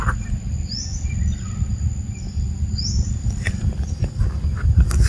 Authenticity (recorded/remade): recorded